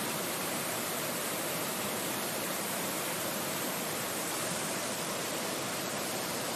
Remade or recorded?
remade